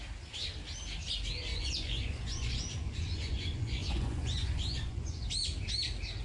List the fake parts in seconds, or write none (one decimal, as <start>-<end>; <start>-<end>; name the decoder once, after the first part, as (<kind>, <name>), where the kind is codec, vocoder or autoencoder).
1.5-5.2 (vocoder, Vocos)